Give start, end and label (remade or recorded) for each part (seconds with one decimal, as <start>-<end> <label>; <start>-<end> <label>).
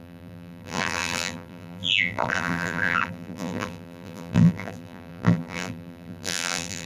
0.0-6.9 remade